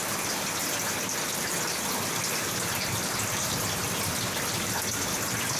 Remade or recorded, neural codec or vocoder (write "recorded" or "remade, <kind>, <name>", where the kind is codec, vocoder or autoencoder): recorded